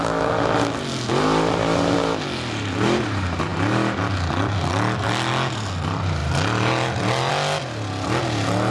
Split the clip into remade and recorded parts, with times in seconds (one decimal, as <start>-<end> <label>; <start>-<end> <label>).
0.0-8.7 recorded